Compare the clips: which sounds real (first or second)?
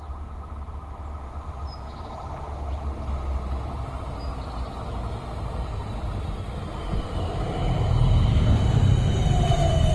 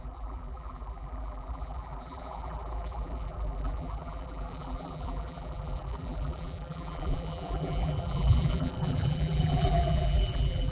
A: first